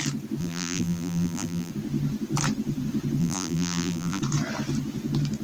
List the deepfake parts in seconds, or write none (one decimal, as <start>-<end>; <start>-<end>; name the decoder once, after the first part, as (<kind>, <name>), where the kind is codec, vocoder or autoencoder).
0.4-1.7 (vocoder, BigVGAN v2); 3.2-4.2